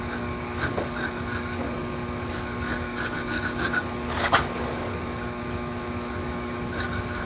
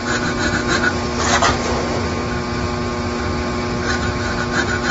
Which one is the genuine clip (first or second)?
second